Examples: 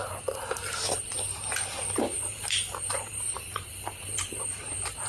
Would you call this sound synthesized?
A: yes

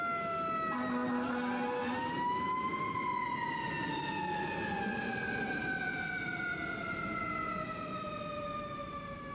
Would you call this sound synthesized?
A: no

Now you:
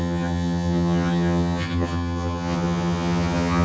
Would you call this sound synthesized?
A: yes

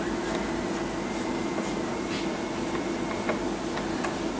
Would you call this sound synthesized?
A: no